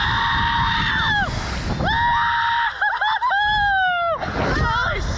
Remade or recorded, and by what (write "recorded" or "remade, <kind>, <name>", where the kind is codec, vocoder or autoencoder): recorded